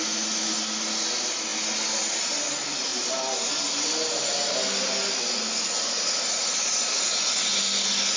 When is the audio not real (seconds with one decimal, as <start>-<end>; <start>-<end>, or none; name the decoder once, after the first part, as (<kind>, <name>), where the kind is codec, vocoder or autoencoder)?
none